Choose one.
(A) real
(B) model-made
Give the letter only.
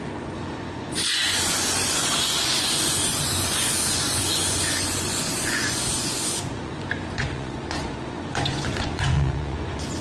B